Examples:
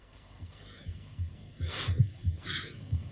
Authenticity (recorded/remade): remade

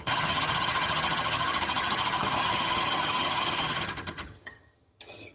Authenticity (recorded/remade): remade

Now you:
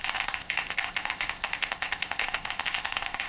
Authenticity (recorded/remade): remade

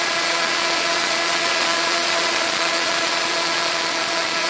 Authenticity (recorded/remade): remade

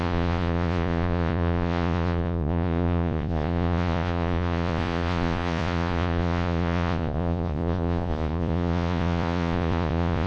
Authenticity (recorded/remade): remade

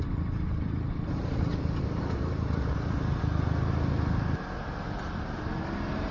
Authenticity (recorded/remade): recorded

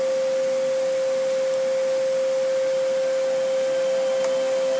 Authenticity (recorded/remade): recorded